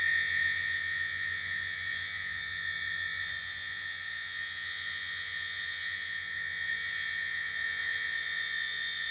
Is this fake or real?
fake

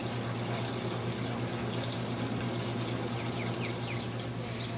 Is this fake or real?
real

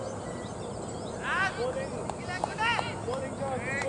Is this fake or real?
real